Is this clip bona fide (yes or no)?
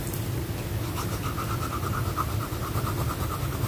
yes